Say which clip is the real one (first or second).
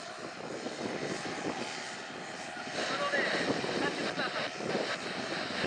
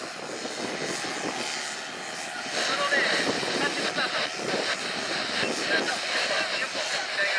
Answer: second